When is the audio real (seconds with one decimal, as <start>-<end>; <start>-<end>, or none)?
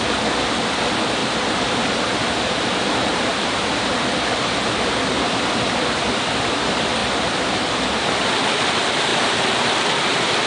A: 0.0-1.2; 4.1-7.0; 7.8-9.1; 9.6-10.5